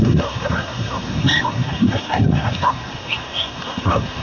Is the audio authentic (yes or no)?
no